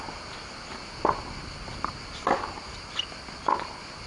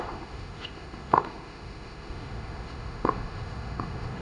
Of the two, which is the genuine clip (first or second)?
first